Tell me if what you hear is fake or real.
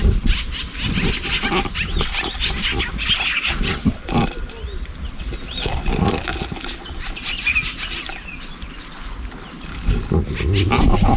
real